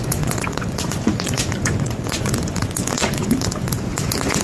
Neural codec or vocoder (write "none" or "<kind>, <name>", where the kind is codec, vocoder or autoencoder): vocoder, Vocos